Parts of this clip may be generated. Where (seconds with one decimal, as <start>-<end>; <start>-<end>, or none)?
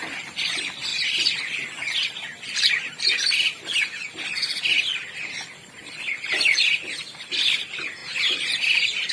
8.0-9.1